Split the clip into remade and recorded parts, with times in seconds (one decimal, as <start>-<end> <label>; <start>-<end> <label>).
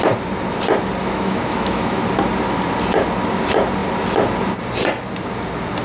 0.0-1.0 recorded; 1.0-2.0 remade; 2.0-5.8 recorded